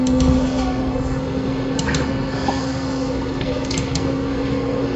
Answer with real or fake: fake